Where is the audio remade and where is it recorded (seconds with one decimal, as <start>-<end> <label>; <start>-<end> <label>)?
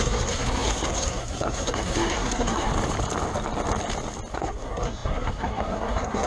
0.0-2.7 remade; 2.7-4.3 recorded; 4.3-6.3 remade